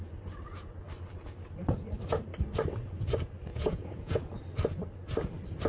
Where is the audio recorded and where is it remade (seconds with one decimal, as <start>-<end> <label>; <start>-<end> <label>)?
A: 0.0-3.5 recorded; 3.5-4.2 remade; 4.2-5.7 recorded